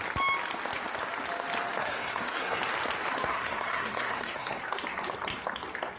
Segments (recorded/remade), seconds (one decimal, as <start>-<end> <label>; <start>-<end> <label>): 0.0-1.8 recorded; 1.8-2.6 remade; 2.6-3.3 recorded; 3.3-4.6 remade; 4.6-6.0 recorded